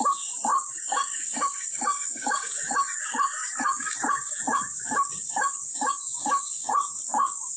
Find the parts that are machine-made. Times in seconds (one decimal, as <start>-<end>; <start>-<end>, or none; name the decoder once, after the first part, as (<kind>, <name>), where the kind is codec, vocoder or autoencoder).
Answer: 0.0-7.6 (codec, DAC)